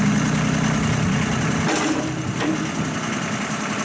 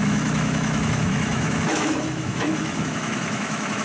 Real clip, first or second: first